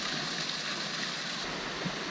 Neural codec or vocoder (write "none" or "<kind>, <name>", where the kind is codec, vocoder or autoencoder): none